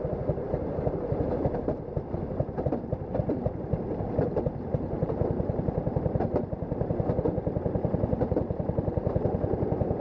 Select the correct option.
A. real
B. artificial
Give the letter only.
B